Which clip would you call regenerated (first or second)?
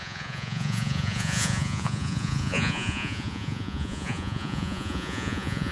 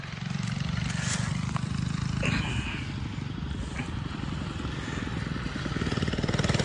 first